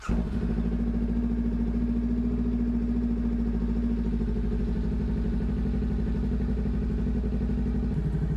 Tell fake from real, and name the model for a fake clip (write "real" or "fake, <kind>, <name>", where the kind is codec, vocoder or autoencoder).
real